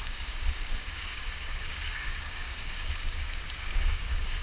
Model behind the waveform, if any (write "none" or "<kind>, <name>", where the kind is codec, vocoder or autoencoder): codec, DAC